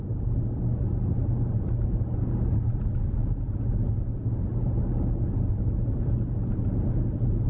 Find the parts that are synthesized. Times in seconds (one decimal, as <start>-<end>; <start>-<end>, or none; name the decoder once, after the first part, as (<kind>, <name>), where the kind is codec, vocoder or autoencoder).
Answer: 3.2-4.3 (vocoder, Vocos)